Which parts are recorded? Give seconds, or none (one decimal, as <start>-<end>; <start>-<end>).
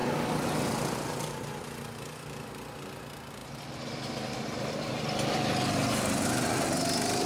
2.5-7.3